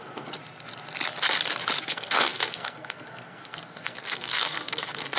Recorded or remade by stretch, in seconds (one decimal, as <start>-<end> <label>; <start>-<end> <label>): 0.0-0.4 remade; 0.4-1.9 recorded; 1.9-5.2 remade